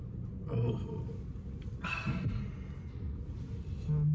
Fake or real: real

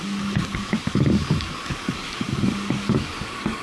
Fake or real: fake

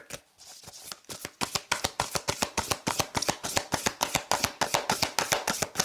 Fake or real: real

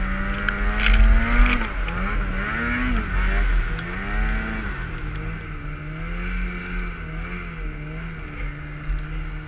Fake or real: real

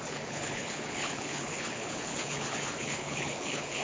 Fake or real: fake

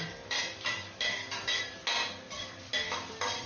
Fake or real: real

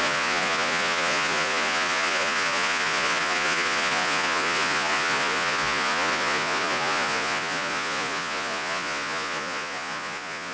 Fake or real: fake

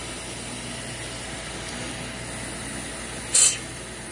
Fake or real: real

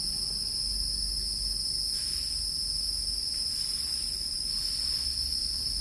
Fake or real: real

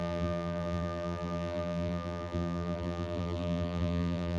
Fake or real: fake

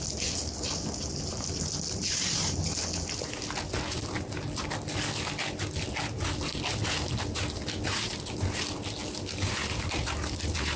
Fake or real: real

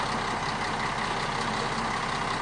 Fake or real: real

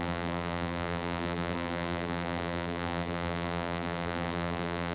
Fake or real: fake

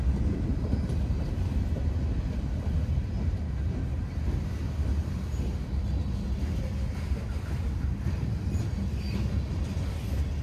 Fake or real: real